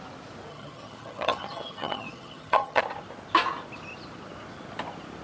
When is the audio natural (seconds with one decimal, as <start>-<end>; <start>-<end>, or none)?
0.0-0.5; 2.8-5.2